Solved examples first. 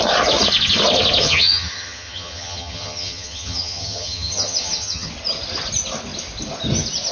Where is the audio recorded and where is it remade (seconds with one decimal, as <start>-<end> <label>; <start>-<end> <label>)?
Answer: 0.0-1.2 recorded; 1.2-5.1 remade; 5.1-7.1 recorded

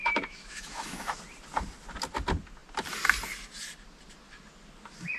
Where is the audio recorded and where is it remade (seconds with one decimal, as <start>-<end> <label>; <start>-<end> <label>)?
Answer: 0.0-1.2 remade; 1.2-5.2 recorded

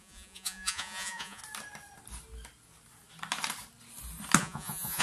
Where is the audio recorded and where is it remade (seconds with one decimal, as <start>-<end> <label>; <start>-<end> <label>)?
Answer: 0.0-1.4 remade; 1.4-4.4 recorded; 4.4-5.0 remade